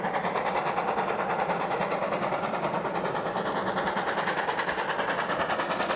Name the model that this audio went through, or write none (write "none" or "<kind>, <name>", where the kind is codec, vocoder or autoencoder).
none